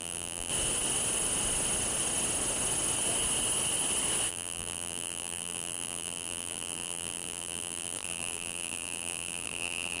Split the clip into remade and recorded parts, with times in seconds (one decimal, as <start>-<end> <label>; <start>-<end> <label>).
0.0-0.5 remade; 0.5-4.3 recorded; 4.3-10.0 remade